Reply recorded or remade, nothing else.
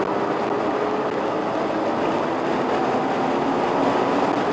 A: recorded